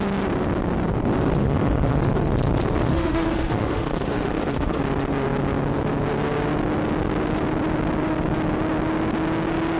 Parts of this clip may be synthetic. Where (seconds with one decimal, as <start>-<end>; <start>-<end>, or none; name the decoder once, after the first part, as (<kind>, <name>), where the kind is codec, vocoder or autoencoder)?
1.4-2.0 (autoencoder, DAC-VAE); 2.9-4.8